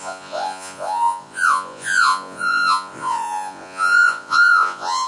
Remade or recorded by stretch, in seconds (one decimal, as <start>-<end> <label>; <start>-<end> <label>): 0.0-5.1 remade